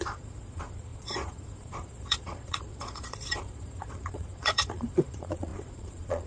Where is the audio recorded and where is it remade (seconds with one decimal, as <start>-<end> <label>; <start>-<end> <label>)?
0.0-6.3 remade